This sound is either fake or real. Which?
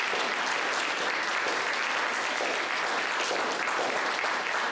real